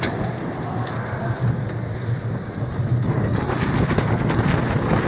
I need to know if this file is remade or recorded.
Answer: recorded